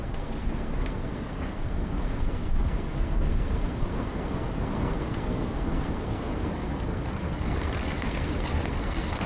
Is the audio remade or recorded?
remade